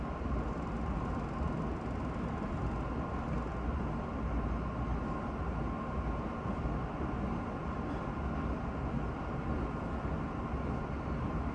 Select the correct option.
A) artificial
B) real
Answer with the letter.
B